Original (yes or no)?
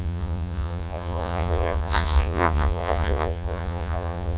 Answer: no